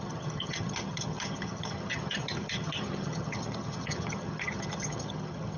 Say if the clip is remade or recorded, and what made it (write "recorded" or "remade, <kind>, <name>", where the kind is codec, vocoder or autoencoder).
remade, vocoder, HiFi-GAN